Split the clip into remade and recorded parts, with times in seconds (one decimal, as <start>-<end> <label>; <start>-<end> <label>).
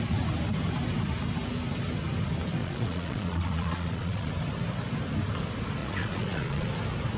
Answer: 0.0-2.6 recorded; 2.6-4.3 remade; 4.3-5.8 recorded; 5.8-6.7 remade; 6.7-7.2 recorded